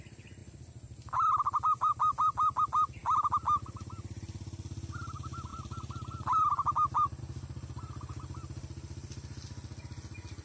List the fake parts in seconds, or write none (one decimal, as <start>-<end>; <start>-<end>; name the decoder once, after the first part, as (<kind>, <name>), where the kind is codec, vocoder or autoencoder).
0.4-2.6 (vocoder, BigVGAN v2); 5.5-7.2